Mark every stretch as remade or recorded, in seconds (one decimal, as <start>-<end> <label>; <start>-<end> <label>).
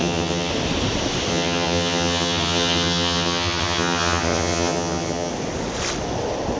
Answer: 0.0-0.5 remade; 0.5-1.3 recorded; 1.3-5.3 remade; 5.3-6.6 recorded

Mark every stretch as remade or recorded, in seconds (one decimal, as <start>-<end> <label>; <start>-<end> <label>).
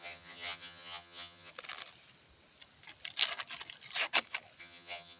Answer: 0.0-1.5 remade; 1.5-4.6 recorded; 4.6-5.2 remade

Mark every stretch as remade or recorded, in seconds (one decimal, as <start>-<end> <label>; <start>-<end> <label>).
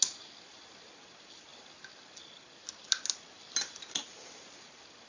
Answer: 0.0-5.1 recorded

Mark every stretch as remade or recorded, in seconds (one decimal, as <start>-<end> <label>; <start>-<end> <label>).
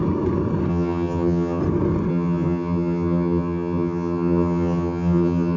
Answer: 0.0-0.7 recorded; 0.7-1.6 remade; 1.6-2.1 recorded; 2.1-5.6 remade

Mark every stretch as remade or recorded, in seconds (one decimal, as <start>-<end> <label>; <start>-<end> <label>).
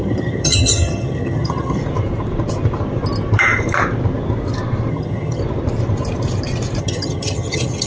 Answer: 0.0-1.8 remade; 1.8-4.9 recorded; 4.9-5.4 remade; 5.4-6.8 recorded; 6.8-7.9 remade